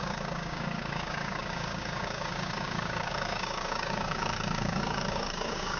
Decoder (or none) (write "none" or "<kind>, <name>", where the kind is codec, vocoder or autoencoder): codec, DAC